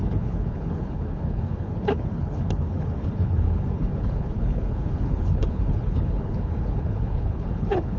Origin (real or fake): fake